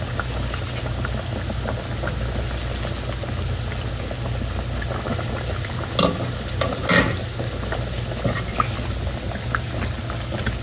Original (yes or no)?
yes